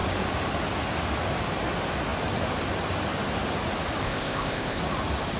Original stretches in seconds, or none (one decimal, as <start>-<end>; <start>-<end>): 0.0-4.0; 4.8-5.4